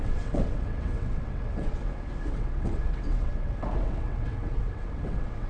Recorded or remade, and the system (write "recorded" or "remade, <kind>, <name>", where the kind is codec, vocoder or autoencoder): remade, vocoder, WaveNeXt